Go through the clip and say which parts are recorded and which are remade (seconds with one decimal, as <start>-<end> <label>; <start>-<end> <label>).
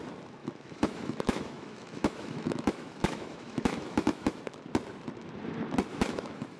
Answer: 0.0-0.4 recorded; 0.4-4.4 remade; 4.4-5.9 recorded; 5.9-6.6 remade